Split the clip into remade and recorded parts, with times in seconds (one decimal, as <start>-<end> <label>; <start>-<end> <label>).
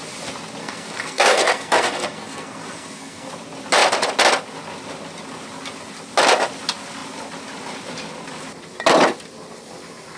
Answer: 0.0-0.6 recorded; 0.6-3.3 remade; 3.3-10.2 recorded